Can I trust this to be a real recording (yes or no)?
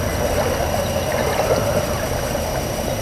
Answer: yes